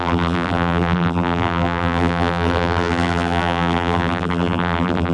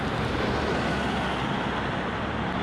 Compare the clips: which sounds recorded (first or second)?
second